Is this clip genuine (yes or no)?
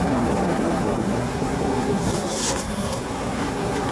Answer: no